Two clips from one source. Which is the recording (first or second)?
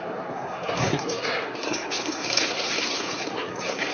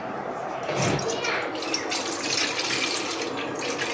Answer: second